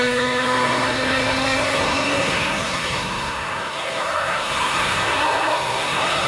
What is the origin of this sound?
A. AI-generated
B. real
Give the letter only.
A